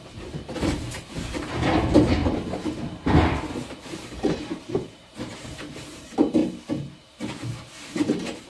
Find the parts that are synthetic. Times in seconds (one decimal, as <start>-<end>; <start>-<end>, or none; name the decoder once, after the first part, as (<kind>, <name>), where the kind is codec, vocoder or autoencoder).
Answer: 0.0-6.4 (vocoder, BigVGAN v2); 7.0-8.5